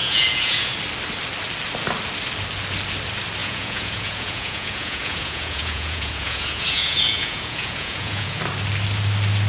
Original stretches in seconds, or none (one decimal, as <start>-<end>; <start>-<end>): 0.7-3.4; 8.4-9.5